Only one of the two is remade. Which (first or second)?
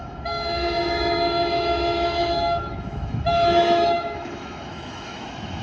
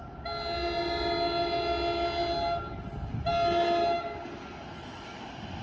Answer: first